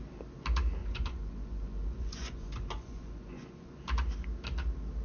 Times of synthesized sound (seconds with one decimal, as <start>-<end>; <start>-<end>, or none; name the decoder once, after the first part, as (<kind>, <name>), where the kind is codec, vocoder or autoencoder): 0.8-3.8 (vocoder, Vocos)